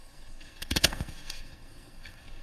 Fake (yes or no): yes